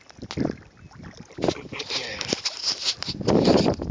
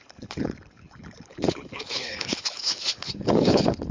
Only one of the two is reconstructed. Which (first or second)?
second